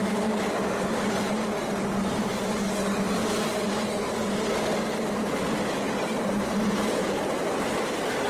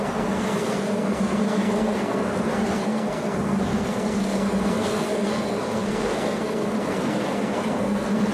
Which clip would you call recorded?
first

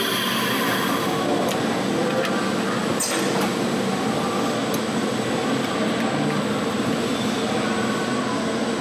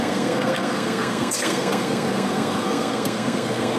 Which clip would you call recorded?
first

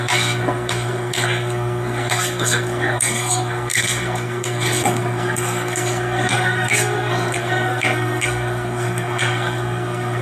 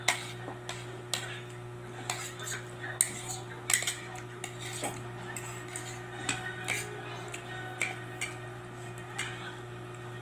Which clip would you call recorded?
second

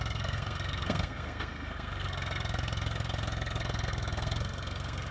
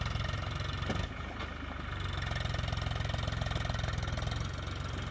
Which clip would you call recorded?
second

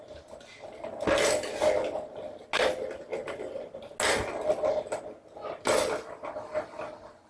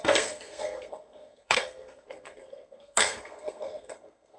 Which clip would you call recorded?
first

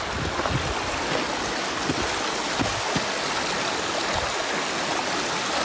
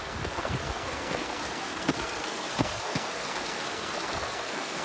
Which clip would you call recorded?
first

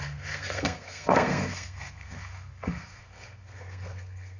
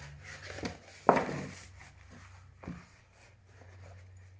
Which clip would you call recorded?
second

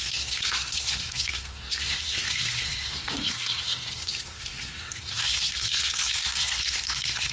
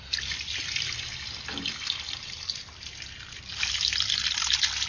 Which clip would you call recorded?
second